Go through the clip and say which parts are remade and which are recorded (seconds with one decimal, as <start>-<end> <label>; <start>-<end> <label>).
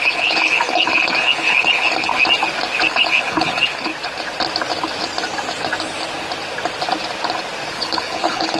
0.0-2.1 remade; 2.1-2.9 recorded; 2.9-3.9 remade; 3.9-7.7 recorded; 7.7-8.6 remade